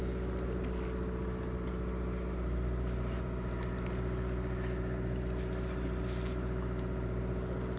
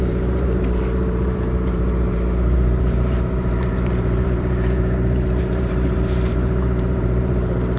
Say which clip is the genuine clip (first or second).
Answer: first